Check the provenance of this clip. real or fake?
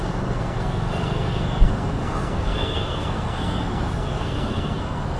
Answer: fake